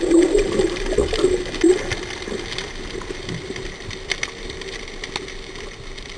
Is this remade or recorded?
recorded